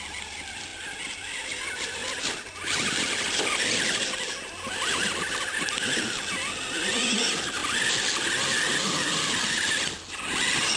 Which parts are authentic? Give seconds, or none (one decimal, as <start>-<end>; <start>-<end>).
0.0-10.8